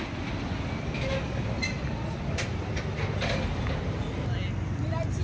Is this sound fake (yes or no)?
no